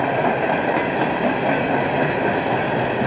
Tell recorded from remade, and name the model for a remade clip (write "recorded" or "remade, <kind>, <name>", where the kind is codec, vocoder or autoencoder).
recorded